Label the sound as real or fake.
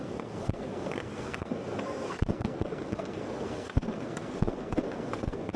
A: fake